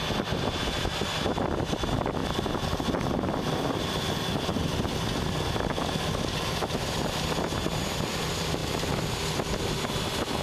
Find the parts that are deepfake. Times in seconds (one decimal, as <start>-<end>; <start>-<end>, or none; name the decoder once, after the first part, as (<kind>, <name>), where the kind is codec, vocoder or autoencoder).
2.2-3.0 (vocoder, BigVGAN v2)